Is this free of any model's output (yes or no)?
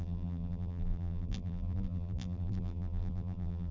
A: no